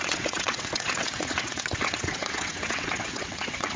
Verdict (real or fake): fake